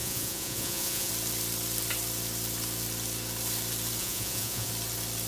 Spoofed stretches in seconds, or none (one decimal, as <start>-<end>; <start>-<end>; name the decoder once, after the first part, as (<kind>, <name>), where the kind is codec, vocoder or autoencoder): 0.0-1.1 (vocoder, Vocos); 4.0-4.7